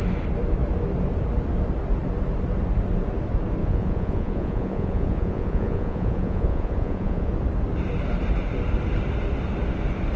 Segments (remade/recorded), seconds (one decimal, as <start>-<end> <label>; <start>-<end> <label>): 0.0-3.6 recorded; 3.6-7.3 remade; 7.3-10.2 recorded